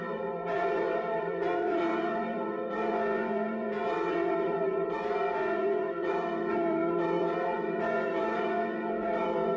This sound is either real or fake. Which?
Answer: fake